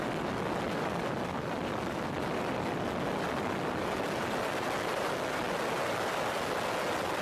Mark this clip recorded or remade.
recorded